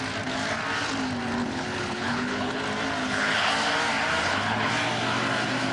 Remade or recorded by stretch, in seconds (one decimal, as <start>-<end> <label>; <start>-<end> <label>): 0.0-1.4 recorded; 1.4-2.6 remade; 2.6-3.0 recorded; 3.0-3.5 remade; 3.5-4.2 recorded; 4.2-4.7 remade; 4.7-5.7 recorded